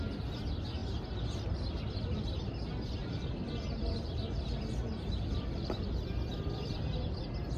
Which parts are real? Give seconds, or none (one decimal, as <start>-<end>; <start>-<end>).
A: 0.0-3.0; 6.9-7.6